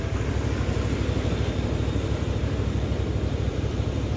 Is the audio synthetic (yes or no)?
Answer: no